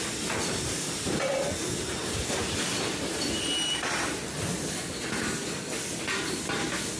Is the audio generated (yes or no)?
no